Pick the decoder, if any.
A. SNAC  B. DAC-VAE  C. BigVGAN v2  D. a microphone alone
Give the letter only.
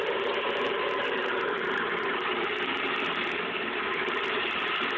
C